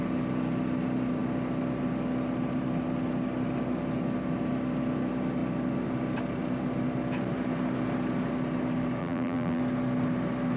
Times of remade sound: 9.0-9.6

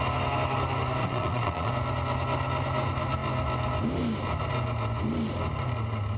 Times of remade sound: 1.0-1.7

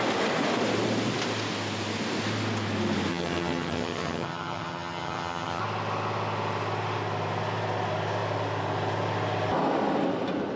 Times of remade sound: 3.1-5.6

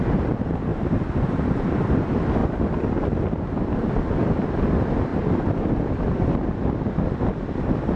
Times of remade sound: 0.0-8.0

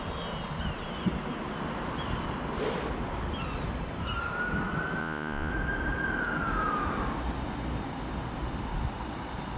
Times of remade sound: 5.0-5.5

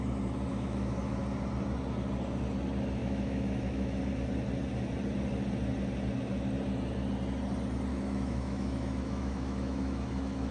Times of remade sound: 0.5-1.2; 3.0-4.0; 7.9-10.5

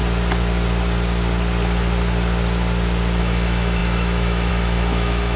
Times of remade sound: 3.2-5.4